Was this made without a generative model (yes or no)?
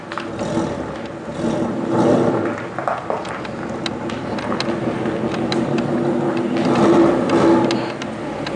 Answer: yes